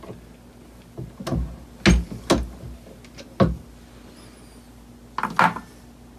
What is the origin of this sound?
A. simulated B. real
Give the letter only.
B